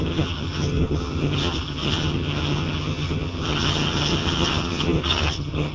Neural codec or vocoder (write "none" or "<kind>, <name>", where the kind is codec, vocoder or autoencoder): vocoder, HiFi-GAN